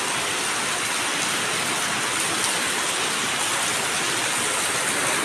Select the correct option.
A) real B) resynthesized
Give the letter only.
A